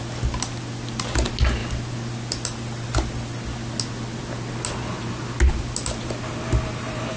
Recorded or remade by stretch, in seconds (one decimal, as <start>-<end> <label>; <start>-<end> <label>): 0.0-7.2 recorded

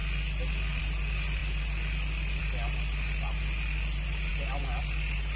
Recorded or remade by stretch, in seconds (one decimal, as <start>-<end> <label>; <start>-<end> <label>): 0.0-5.4 recorded

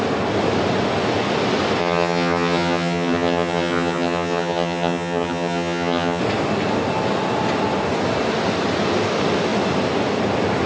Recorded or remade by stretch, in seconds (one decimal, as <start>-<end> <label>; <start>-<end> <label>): 0.0-1.8 recorded; 1.8-6.2 remade; 6.2-10.7 recorded

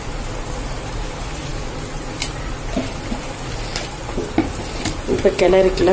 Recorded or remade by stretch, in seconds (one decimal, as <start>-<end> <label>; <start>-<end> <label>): 0.0-3.7 recorded; 3.7-5.5 remade; 5.5-5.9 recorded

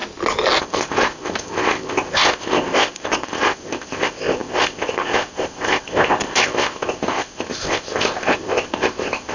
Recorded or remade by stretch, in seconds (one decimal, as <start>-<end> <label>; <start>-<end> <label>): 0.0-0.6 recorded; 0.6-9.3 remade

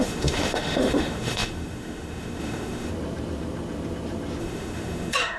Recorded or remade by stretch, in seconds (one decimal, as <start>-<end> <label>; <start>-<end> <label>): 0.0-2.9 remade; 2.9-4.4 recorded; 4.4-5.4 remade